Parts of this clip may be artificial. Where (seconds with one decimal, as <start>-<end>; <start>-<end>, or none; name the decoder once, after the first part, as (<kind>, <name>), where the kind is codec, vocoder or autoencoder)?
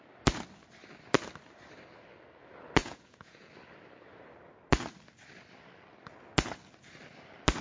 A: 2.8-3.5 (vocoder, Vocos)